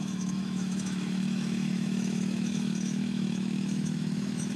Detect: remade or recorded remade